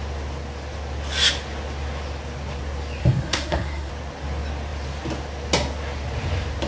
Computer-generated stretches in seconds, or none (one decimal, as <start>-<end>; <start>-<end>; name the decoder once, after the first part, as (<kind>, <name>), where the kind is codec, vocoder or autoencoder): 3.0-3.9 (codec, SNAC)